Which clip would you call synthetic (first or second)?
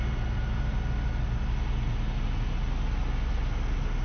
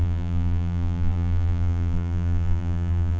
second